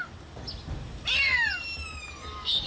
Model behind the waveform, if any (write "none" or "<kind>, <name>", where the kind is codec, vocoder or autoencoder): none